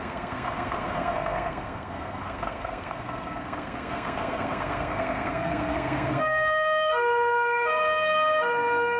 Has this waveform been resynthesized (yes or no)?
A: yes